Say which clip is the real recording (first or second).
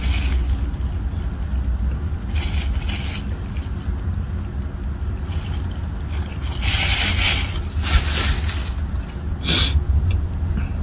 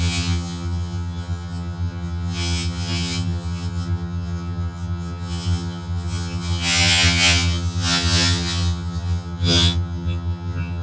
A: first